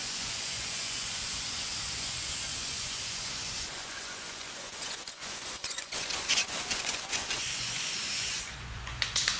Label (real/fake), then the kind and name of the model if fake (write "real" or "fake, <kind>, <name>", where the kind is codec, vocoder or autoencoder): fake, vocoder, Vocos